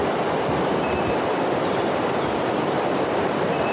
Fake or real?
fake